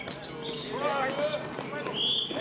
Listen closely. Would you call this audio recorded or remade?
recorded